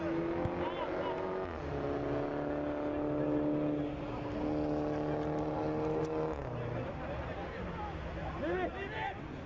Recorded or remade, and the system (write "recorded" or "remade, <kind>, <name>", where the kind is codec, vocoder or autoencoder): recorded